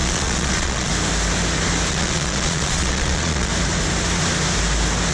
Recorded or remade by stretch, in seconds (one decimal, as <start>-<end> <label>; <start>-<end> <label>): 0.0-0.9 remade; 0.9-1.9 recorded; 1.9-3.5 remade; 3.5-5.1 recorded